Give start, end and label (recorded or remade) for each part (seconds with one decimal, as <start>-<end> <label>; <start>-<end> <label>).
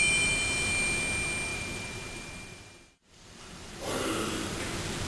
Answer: 0.0-1.5 recorded; 1.5-4.6 remade; 4.6-5.1 recorded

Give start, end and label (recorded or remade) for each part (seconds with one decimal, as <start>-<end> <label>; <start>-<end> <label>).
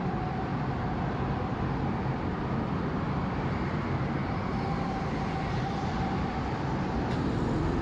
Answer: 0.0-7.8 remade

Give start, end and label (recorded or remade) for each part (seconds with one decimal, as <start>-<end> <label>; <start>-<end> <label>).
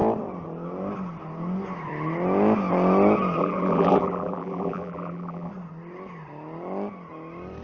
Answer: 0.0-3.4 recorded; 3.4-5.5 remade; 5.5-7.6 recorded